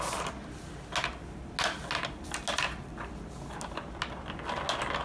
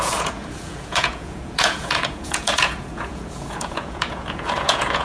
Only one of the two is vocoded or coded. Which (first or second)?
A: second